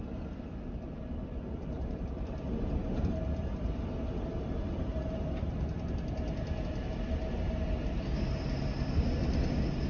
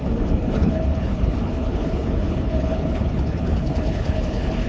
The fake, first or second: second